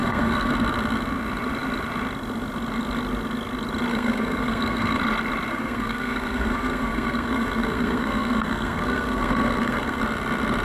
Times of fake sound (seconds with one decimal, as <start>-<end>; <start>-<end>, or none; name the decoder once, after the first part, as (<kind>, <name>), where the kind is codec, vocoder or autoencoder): 0.0-0.5 (codec, SNAC); 3.9-5.0; 5.5-10.0